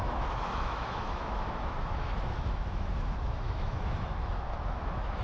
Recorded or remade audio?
remade